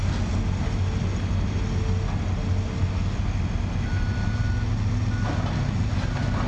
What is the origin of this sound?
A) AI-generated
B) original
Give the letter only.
B